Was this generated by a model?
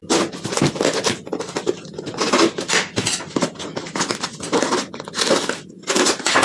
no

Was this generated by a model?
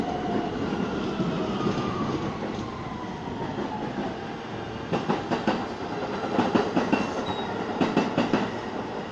no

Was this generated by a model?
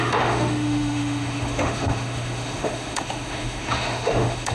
yes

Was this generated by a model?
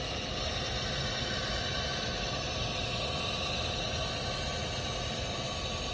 no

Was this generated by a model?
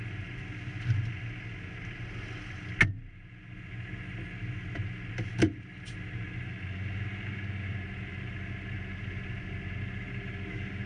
no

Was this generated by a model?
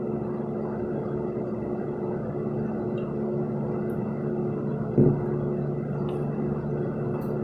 no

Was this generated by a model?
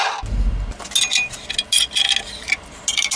no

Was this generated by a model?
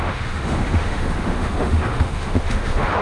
yes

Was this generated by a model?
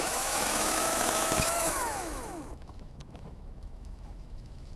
yes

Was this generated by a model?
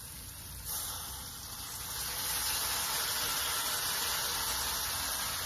no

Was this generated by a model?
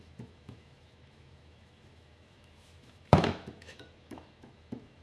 yes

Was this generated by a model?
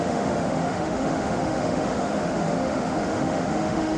yes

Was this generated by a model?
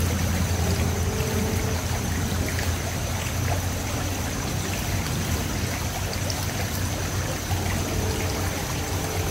no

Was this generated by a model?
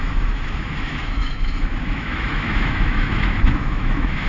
yes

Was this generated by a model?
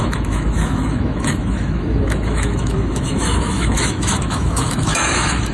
yes